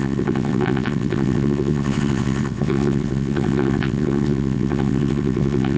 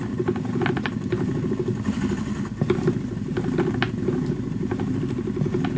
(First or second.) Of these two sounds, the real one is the second